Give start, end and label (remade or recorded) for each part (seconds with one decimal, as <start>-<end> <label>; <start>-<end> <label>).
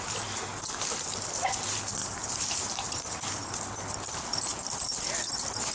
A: 0.0-2.0 recorded; 2.0-3.2 remade; 3.2-5.7 recorded